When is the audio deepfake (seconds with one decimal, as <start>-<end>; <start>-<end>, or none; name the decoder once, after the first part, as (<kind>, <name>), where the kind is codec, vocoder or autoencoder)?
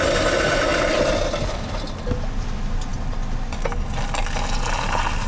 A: none